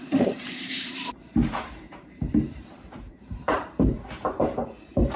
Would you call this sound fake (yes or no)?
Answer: yes